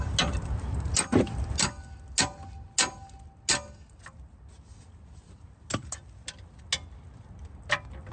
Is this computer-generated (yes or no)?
no